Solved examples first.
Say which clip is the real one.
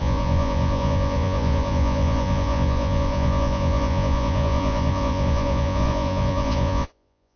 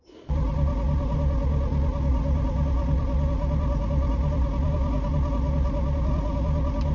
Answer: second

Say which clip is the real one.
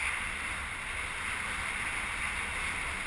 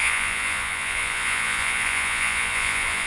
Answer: first